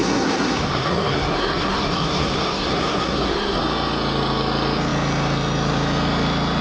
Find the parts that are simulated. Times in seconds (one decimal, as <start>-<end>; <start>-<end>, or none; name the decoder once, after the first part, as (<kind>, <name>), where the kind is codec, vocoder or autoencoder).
0.0-3.6 (codec, SNAC)